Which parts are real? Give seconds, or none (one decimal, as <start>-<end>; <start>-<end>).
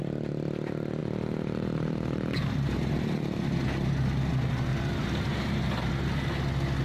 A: 0.0-1.0; 2.9-4.7; 5.9-6.8